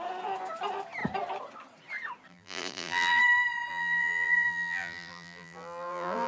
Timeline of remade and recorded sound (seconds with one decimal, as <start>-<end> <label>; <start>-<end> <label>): 0.0-2.3 recorded; 2.3-3.2 remade; 3.2-3.7 recorded; 3.7-6.3 remade